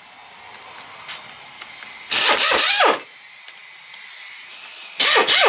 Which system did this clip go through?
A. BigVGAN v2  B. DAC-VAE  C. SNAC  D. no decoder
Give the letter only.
D